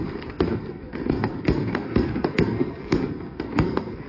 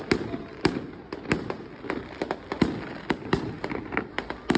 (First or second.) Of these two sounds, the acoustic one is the second